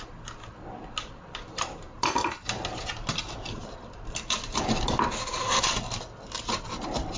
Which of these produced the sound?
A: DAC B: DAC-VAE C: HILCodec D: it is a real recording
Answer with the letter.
D